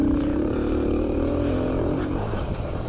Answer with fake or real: fake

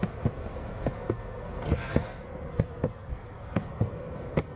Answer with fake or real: fake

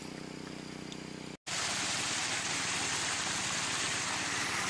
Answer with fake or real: real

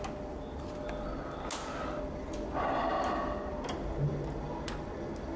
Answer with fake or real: real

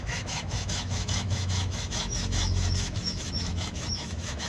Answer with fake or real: fake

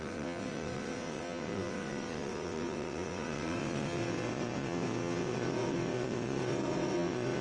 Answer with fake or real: fake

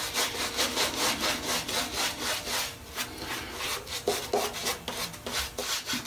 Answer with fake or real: real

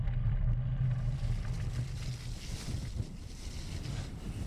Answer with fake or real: real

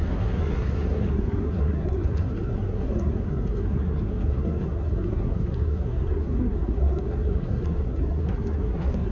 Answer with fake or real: fake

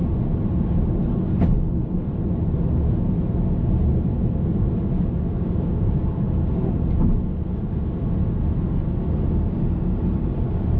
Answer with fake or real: real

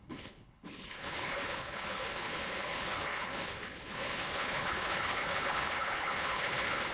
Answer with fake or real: fake